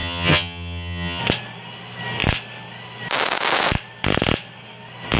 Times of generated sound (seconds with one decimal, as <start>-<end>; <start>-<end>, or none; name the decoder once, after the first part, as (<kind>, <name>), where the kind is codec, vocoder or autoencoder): 0.0-1.2 (vocoder, HiFi-GAN)